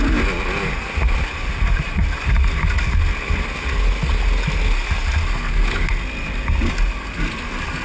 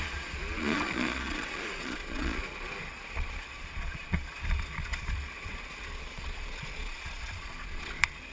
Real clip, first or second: first